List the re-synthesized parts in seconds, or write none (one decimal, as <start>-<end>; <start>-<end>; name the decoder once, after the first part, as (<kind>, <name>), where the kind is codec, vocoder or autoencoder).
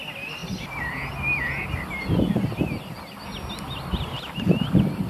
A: none